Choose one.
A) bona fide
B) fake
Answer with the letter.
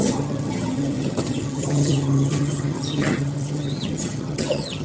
B